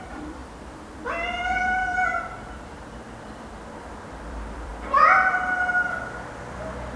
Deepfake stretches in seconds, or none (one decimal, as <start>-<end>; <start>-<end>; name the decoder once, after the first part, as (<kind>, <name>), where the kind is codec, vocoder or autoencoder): 0.0-0.4 (vocoder, BigVGAN v2); 1.3-1.8; 3.8-7.0